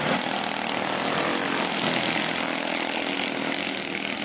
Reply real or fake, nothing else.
real